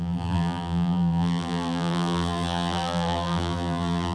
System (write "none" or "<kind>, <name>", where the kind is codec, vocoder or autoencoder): vocoder, BigVGAN v2